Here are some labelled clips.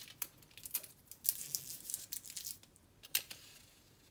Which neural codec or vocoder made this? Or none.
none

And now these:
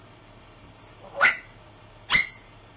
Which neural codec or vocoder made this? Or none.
none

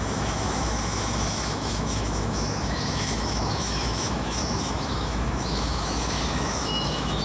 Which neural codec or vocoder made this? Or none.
autoencoder, DAC-VAE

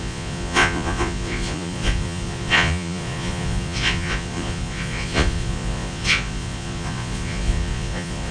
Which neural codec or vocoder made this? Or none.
vocoder, Vocos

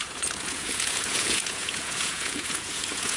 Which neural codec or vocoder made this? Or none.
vocoder, Vocos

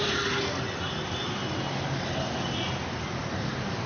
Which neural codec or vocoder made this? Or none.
none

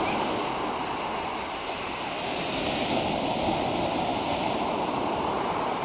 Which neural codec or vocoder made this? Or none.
vocoder, BigVGAN v2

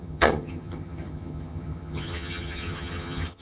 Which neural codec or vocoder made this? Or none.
vocoder, HiFi-GAN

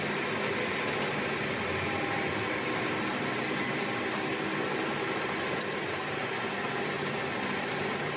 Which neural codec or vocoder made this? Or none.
none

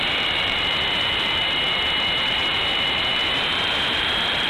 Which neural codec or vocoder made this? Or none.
vocoder, BigVGAN v2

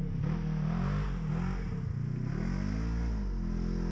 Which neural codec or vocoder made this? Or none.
none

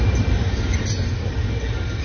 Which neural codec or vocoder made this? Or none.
none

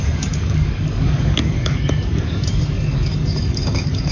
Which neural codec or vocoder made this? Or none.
codec, DAC